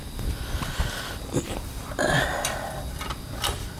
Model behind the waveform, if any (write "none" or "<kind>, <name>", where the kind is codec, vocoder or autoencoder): vocoder, BigVGAN v2